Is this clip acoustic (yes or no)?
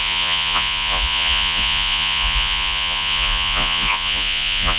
no